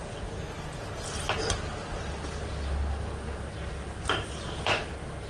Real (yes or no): yes